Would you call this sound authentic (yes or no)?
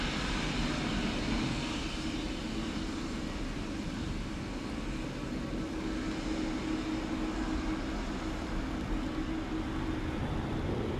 yes